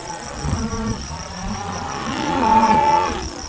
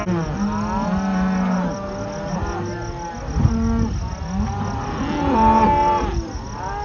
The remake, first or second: first